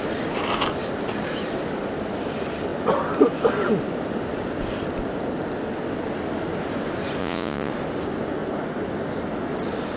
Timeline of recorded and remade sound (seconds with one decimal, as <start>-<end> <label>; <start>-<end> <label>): 0.0-7.2 recorded; 7.2-7.7 remade; 7.7-10.0 recorded